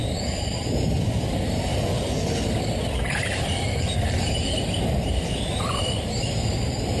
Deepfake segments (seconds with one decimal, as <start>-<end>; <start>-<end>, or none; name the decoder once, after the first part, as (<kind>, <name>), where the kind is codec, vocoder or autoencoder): 0.0-1.7 (vocoder, BigVGAN v2); 3.1-7.0